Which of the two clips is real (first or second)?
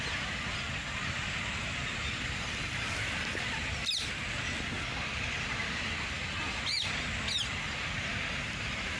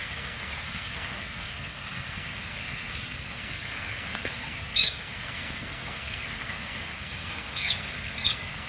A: first